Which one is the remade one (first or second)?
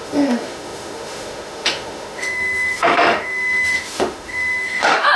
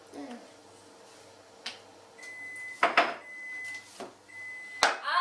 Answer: first